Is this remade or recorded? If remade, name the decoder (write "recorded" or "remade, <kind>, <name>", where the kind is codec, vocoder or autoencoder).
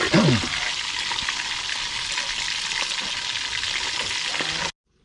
recorded